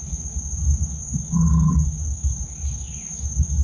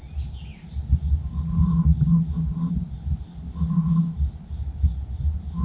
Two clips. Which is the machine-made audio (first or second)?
first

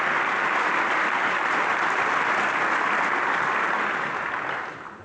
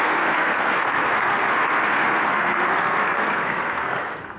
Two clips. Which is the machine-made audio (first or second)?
second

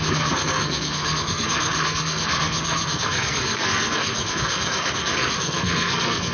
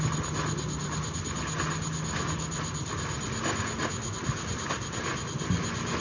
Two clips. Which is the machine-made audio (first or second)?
first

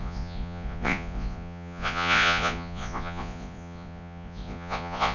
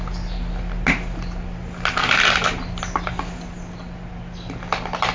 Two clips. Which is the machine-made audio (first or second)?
first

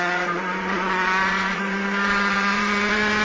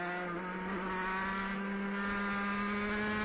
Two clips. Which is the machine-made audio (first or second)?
first